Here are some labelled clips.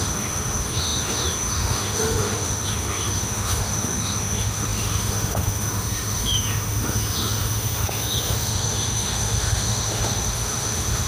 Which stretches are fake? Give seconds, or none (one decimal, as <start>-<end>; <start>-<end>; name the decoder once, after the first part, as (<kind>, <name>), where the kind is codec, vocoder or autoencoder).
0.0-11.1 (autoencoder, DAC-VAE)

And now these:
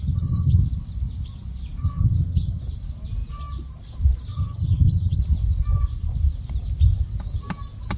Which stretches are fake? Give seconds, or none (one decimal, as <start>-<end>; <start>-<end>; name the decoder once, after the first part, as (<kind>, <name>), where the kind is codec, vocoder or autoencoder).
0.0-0.6 (vocoder, HiFi-GAN); 1.8-2.6; 4.3-5.2

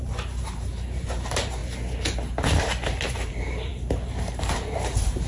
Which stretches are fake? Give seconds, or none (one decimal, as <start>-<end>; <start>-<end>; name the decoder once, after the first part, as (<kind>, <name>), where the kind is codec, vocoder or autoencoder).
0.0-1.6 (vocoder, BigVGAN v2); 2.6-5.3

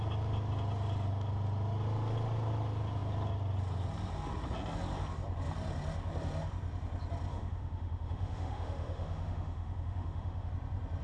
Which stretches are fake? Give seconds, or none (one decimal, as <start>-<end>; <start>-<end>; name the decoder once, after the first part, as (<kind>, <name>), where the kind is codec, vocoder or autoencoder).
7.3-10.5 (autoencoder, DAC-VAE)